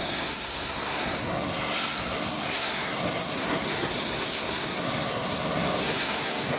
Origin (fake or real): fake